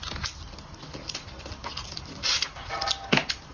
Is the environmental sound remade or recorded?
recorded